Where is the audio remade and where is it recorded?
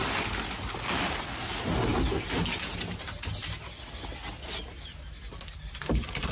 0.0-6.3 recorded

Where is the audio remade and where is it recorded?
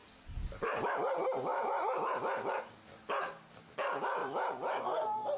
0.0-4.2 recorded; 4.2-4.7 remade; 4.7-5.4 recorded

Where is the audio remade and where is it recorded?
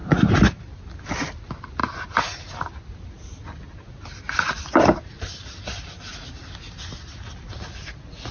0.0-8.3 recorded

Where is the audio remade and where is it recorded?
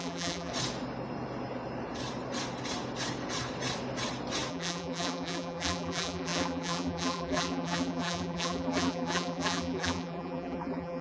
0.0-0.5 remade; 0.5-4.5 recorded; 4.5-11.0 remade